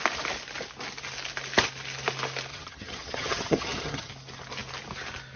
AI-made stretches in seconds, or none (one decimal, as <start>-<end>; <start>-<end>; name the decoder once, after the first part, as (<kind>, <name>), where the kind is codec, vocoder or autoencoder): 2.5-4.1 (vocoder, HiFi-GAN)

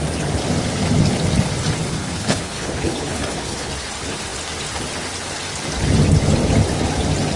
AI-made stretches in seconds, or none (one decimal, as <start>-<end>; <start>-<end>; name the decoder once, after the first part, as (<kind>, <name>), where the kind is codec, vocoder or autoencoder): 1.9-3.7 (codec, HILCodec)

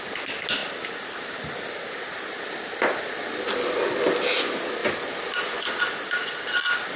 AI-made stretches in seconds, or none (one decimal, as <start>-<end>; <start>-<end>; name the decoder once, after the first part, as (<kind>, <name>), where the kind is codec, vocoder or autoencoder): none

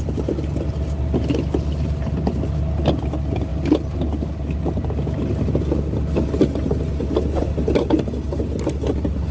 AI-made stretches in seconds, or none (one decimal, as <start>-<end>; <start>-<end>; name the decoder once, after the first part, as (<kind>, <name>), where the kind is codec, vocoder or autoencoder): none

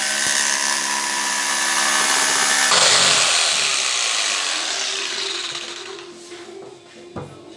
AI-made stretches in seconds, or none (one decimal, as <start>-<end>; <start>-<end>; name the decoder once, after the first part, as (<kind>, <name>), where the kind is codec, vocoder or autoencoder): none